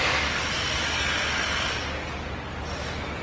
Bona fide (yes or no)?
yes